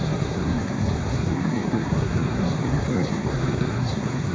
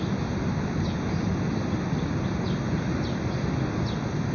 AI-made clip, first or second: first